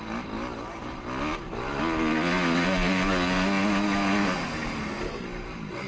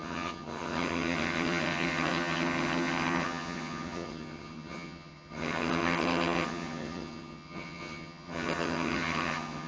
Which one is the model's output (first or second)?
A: second